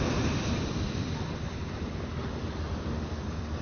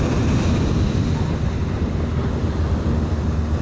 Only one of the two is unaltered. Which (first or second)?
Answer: second